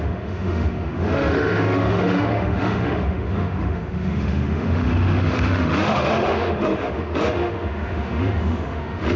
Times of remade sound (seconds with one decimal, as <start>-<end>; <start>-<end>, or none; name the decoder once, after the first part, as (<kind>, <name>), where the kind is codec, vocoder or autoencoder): 0.0-9.2 (autoencoder, DAC-VAE)